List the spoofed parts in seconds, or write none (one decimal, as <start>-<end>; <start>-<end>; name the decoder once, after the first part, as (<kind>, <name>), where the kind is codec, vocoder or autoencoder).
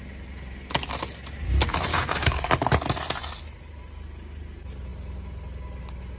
1.9-2.4 (codec, DAC)